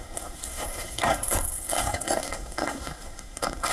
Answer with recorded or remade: remade